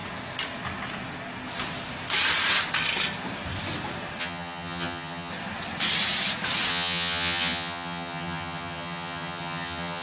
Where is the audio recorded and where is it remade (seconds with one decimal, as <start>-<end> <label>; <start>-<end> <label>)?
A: 0.0-4.2 recorded; 4.2-5.3 remade; 5.3-6.7 recorded; 6.7-10.0 remade